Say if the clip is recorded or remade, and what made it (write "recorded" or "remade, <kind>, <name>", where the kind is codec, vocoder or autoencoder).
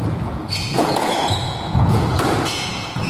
remade, vocoder, Vocos